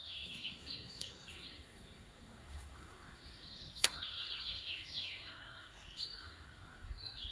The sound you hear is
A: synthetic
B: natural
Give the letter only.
A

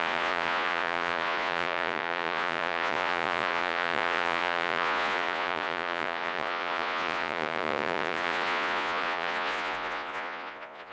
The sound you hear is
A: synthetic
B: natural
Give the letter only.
A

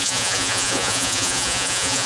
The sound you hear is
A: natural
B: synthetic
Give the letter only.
B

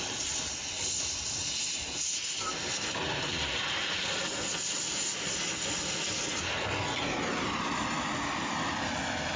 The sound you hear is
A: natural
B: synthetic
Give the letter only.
A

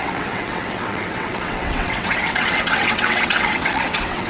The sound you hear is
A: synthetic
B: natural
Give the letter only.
A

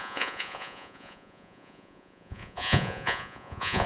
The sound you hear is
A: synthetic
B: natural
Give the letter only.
A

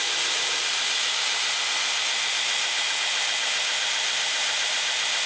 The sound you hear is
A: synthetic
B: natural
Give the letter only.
B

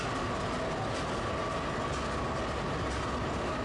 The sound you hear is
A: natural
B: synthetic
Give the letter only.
A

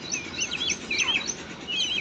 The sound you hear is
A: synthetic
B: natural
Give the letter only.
B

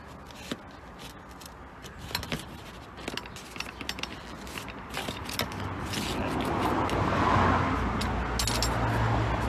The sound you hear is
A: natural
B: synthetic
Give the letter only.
A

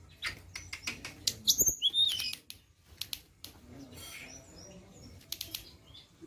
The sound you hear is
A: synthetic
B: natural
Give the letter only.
B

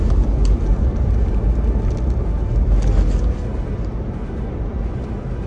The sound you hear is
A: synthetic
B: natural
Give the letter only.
B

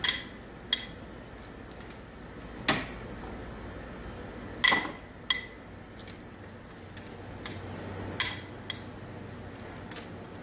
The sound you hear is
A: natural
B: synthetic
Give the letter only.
A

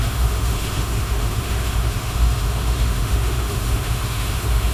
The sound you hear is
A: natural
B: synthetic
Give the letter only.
B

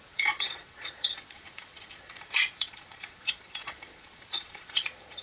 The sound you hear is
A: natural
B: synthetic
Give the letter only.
B